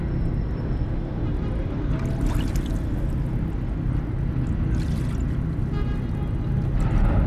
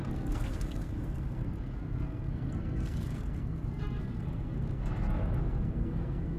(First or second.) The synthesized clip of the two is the second